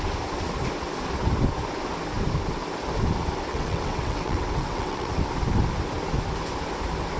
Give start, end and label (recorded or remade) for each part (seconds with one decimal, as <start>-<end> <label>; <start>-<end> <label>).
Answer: 0.0-3.5 recorded; 3.5-5.2 remade; 5.2-7.2 recorded